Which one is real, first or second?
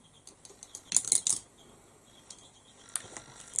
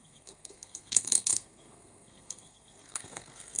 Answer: first